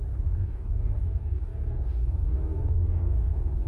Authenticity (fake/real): fake